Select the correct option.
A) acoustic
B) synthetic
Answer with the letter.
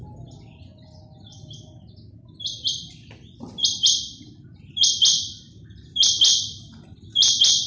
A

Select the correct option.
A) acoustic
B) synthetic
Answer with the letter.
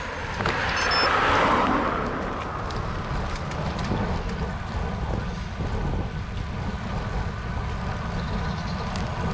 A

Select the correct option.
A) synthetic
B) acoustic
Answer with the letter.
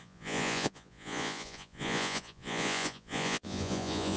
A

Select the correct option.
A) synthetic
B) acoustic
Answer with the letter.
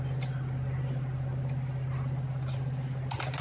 B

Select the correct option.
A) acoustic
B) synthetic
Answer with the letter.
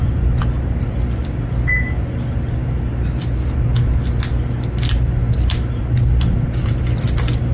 A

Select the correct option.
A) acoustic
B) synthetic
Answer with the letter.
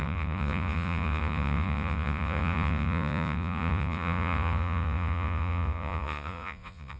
B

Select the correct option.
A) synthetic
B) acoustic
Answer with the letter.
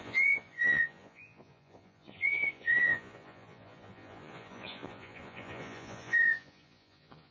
A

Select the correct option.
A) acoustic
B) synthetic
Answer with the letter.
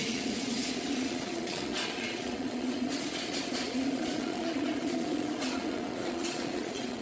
B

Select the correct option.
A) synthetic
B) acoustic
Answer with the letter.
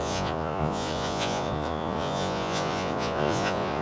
A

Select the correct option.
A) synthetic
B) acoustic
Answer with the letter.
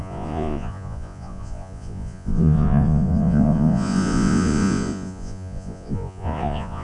A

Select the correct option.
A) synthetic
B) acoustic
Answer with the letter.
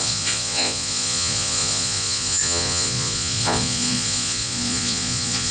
A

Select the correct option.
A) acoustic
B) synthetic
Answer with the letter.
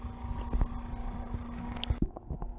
A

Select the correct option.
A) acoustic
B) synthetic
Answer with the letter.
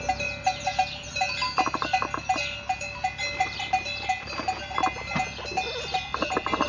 A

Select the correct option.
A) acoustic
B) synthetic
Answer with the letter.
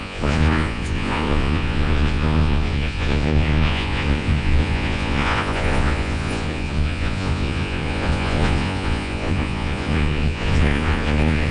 B